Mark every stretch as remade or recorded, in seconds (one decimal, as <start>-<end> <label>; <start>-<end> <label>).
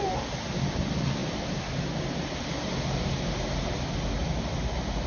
0.0-5.1 recorded